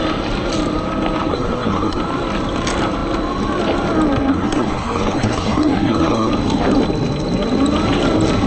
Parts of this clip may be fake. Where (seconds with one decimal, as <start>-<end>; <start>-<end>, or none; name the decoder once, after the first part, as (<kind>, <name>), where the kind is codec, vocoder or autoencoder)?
1.3-2.0 (codec, SNAC); 4.3-6.3